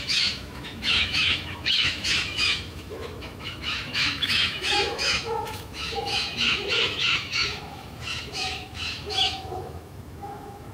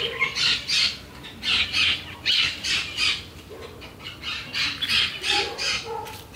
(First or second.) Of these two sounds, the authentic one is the second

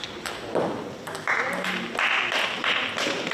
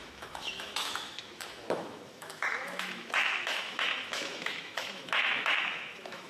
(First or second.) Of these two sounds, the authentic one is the first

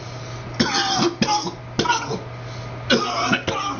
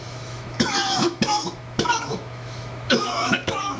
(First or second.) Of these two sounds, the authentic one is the first